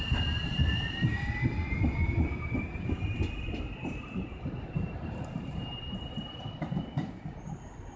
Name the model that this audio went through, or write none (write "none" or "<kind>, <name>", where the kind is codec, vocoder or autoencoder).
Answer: vocoder, BigVGAN v2